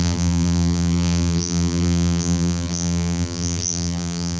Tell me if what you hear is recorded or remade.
remade